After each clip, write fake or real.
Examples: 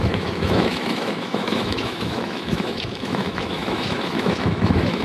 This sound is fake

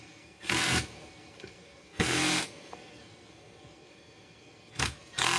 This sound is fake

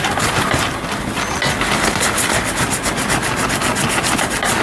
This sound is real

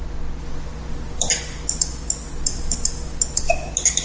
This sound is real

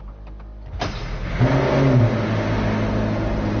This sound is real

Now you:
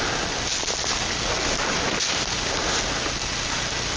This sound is real